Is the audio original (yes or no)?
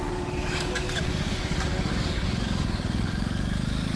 no